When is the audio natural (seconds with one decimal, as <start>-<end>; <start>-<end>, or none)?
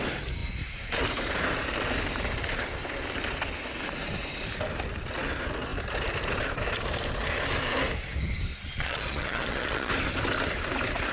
0.0-8.5; 9.9-11.1